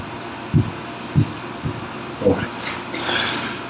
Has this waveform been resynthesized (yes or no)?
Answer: no